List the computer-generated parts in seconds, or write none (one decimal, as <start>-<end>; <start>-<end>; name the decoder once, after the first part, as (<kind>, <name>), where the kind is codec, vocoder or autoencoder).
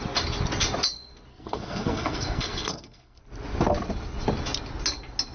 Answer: 1.3-3.2 (codec, SNAC)